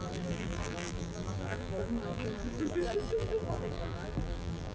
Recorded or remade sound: remade